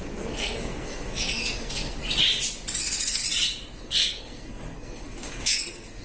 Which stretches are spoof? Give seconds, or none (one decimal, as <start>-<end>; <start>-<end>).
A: 0.0-2.0; 2.8-3.2; 3.8-6.0